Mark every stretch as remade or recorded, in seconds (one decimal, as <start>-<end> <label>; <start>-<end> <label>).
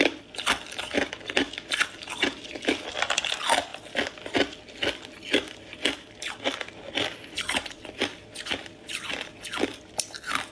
0.0-10.5 recorded